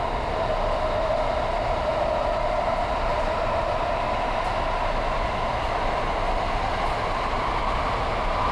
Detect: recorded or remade recorded